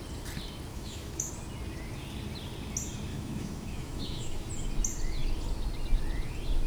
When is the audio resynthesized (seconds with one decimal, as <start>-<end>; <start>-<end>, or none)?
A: 0.7-1.3; 3.1-4.5